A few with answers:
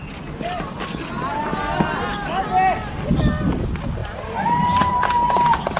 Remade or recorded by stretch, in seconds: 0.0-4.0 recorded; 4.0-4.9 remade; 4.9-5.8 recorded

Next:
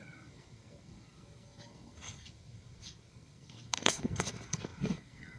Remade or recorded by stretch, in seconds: 0.0-5.4 remade